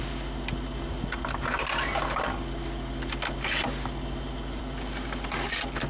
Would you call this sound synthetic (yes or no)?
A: no